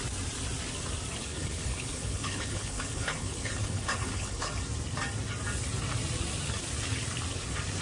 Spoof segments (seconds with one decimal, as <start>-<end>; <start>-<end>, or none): 1.2-4.5